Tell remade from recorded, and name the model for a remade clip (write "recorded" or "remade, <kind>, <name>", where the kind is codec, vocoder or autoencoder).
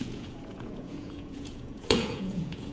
remade, vocoder, Vocos